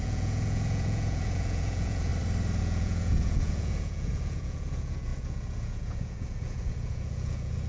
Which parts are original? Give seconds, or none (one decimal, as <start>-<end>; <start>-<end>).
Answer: 2.1-2.6